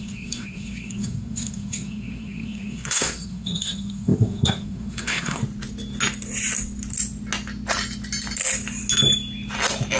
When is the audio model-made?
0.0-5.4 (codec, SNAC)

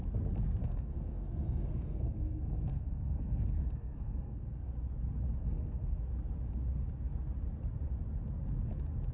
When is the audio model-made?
0.6-4.7 (codec, SNAC); 5.4-6.0